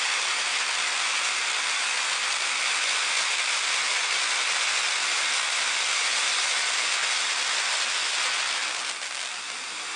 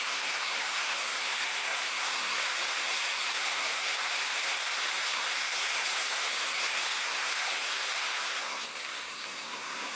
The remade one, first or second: second